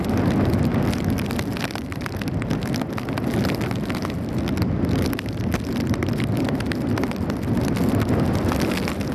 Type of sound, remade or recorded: recorded